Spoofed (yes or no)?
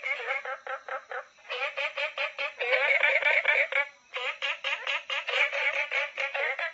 no